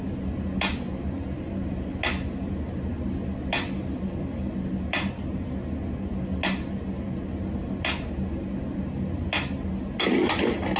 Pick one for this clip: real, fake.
real